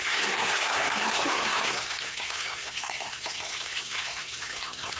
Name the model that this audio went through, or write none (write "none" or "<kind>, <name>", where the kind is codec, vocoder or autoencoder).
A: codec, SNAC